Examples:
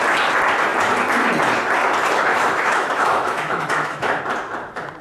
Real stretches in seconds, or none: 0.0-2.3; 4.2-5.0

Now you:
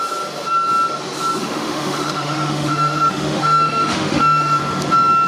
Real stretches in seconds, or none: 0.0-1.4; 4.6-5.3

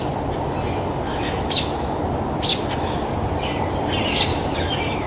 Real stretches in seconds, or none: 0.0-1.1; 2.0-2.5; 3.0-4.3

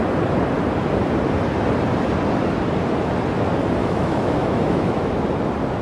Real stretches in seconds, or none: 0.0-3.8; 5.1-5.8

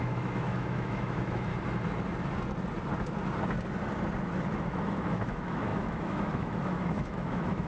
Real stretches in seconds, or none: 1.5-4.5